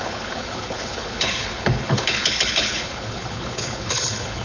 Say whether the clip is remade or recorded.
remade